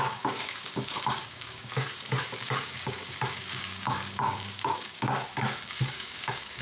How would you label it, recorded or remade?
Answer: remade